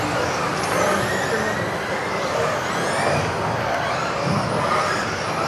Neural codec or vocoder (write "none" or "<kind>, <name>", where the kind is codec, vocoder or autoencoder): none